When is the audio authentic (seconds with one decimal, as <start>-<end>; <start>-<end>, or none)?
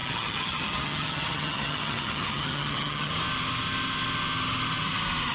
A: 3.1-5.3